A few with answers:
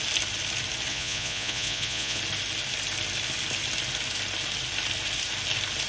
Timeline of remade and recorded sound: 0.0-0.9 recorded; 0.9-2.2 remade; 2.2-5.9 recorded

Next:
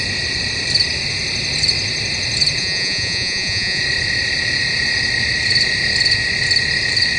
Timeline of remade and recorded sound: 0.0-2.6 recorded; 2.6-3.8 remade; 3.8-7.2 recorded